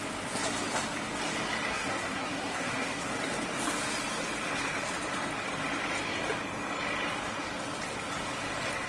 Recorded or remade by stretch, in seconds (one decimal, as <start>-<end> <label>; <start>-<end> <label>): 0.0-1.7 recorded; 1.7-3.1 remade; 3.1-8.9 recorded